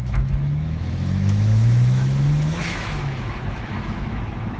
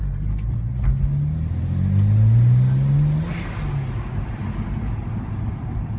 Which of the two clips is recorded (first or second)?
second